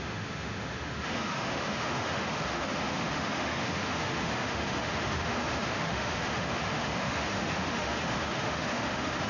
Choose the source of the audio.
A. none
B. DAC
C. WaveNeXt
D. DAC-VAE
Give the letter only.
D